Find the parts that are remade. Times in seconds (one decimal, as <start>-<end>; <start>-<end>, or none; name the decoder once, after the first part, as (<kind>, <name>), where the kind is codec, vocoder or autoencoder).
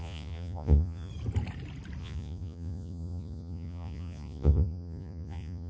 0.0-1.1 (vocoder, Vocos); 2.0-5.7